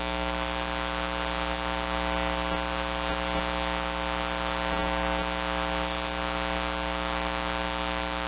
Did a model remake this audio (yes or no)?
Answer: yes